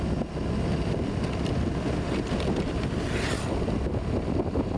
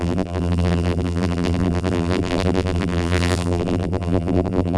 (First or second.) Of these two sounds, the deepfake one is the second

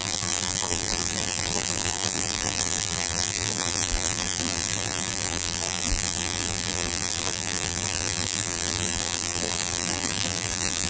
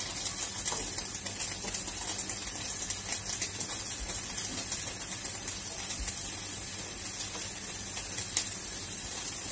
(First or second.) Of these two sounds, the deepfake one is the first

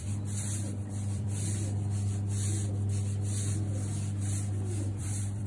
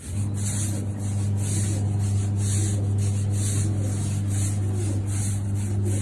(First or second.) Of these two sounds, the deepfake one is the first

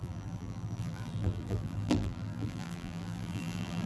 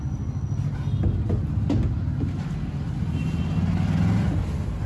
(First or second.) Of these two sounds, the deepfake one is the first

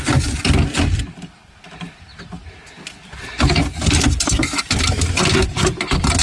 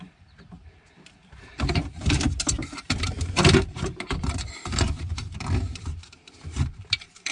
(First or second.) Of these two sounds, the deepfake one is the second